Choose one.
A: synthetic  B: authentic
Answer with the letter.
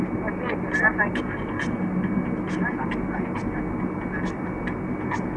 B